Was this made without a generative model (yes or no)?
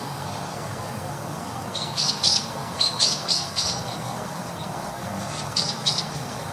no